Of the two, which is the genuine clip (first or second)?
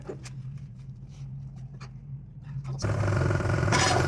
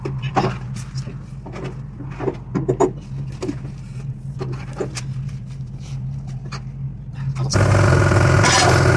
second